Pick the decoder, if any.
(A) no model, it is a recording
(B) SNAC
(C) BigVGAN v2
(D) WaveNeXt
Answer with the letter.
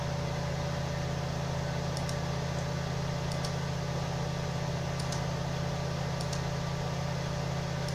A